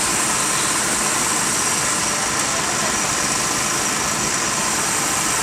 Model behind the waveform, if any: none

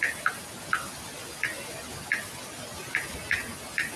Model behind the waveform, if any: none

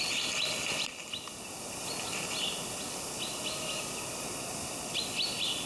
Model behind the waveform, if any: none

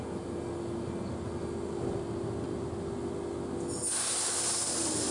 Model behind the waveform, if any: none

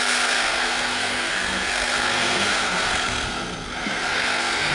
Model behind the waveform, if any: codec, SNAC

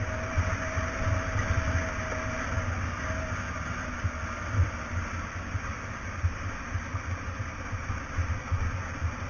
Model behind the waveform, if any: none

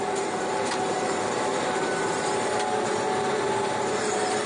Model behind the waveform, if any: vocoder, BigVGAN v2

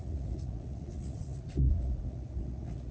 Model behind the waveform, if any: vocoder, Vocos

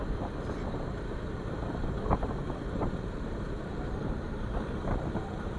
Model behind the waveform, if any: vocoder, BigVGAN v2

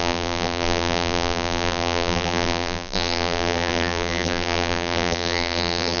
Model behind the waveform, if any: vocoder, BigVGAN v2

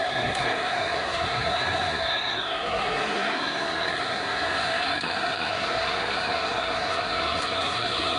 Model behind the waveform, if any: codec, SNAC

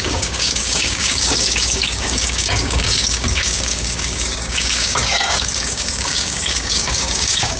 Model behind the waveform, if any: codec, DAC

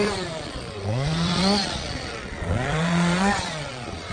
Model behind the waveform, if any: vocoder, Vocos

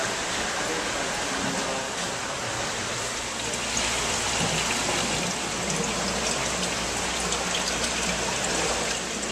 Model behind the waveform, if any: none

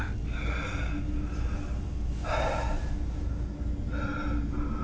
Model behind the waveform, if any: none